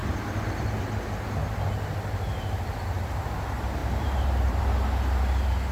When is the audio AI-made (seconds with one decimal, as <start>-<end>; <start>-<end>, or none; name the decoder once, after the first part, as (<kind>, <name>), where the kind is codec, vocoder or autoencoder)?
3.8-4.6 (vocoder, BigVGAN v2)